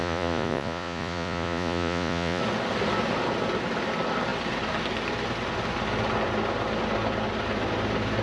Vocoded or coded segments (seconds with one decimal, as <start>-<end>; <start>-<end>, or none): 0.0-2.4